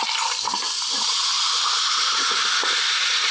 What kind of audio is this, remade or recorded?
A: remade